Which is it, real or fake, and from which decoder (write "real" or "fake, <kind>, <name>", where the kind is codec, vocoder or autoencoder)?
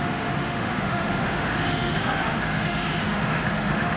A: fake, autoencoder, DAC-VAE